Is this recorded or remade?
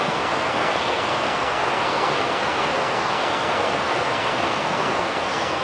remade